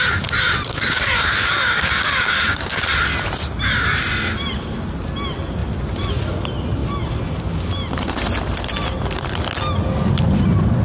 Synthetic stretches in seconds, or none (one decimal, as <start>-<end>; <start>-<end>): 0.7-2.7